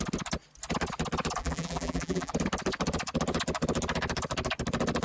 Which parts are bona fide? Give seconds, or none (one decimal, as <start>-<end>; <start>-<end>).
0.0-1.4; 2.3-5.0